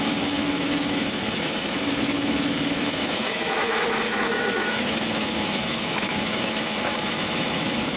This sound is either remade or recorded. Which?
remade